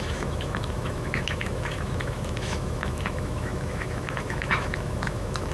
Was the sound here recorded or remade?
remade